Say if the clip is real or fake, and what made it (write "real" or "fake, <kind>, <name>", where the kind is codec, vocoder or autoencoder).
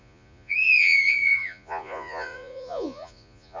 fake, vocoder, Vocos